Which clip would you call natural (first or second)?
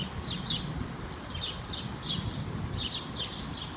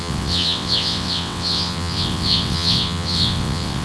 first